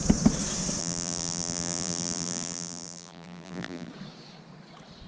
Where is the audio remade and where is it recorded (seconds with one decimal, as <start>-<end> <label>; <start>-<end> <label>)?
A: 0.0-0.8 recorded; 0.8-3.9 remade; 3.9-5.1 recorded